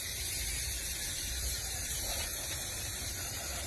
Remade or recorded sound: remade